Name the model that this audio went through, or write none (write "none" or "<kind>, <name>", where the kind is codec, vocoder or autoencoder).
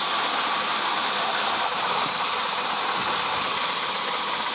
none